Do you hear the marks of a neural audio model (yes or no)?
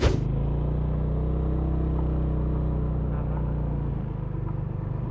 no